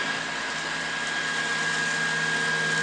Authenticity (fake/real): real